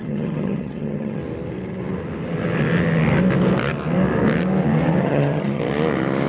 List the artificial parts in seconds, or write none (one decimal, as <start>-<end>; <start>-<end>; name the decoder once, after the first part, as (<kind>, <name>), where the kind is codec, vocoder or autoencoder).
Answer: 0.0-1.2 (vocoder, HiFi-GAN); 5.0-5.6